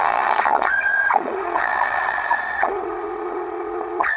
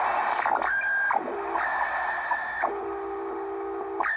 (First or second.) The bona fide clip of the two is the second